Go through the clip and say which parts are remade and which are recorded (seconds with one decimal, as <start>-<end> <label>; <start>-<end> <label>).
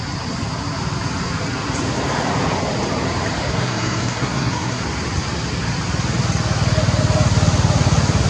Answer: 0.0-3.5 recorded; 3.5-4.8 remade; 4.8-8.3 recorded